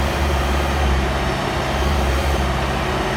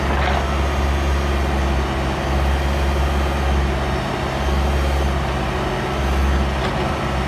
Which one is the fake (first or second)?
first